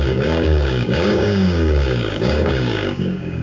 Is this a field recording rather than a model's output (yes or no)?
no